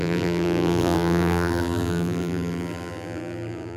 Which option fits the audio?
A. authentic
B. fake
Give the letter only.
B